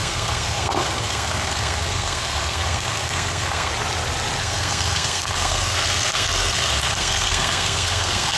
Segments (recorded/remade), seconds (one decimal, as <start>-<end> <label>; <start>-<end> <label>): 0.0-3.7 remade; 3.7-4.4 recorded; 4.4-8.4 remade